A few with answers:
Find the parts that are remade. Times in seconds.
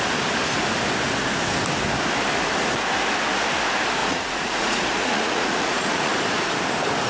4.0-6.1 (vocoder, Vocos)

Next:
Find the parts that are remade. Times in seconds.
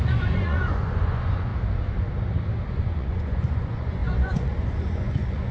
0.0-1.5 (vocoder, Vocos); 2.7-5.5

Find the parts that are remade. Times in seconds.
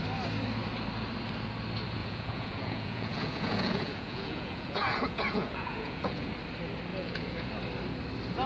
2.0-6.3 (vocoder, Vocos); 6.9-7.5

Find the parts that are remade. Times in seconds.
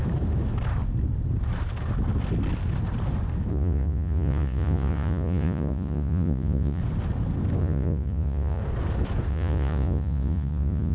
3.5-6.8 (vocoder, Vocos); 7.6-8.6; 9.3-10.9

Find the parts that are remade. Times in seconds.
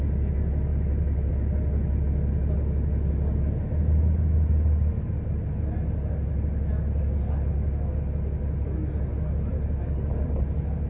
none